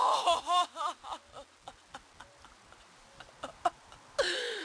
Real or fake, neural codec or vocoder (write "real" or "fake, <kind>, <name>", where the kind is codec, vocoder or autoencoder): real